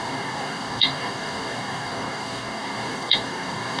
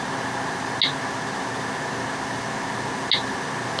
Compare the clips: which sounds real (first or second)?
second